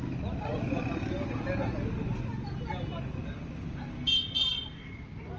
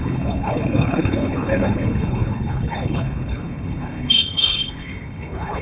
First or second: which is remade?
second